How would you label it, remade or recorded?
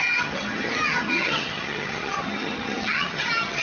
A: remade